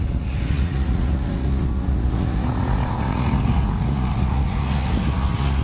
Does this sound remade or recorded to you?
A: remade